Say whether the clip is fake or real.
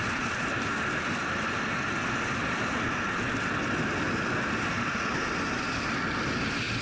real